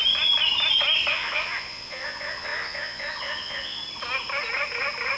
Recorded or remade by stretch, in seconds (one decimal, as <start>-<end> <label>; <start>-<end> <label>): 0.0-1.1 recorded; 1.1-3.8 remade; 3.8-5.2 recorded